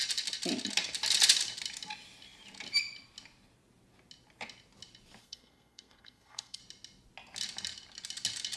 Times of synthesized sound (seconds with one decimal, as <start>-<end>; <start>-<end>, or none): 5.2-6.6